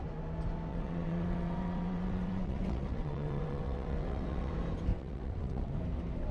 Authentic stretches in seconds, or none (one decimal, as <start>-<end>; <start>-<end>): 0.0-0.7; 4.5-4.9; 5.7-6.3